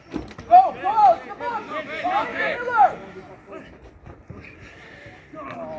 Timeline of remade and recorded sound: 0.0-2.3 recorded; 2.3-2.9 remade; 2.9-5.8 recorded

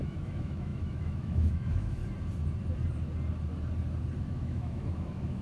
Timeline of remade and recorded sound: 0.0-2.0 remade; 2.0-4.2 recorded; 4.2-5.4 remade